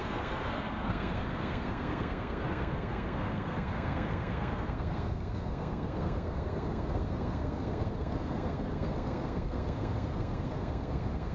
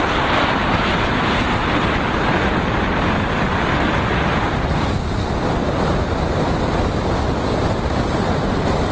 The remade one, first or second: first